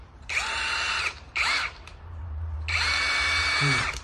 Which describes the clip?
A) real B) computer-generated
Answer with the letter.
B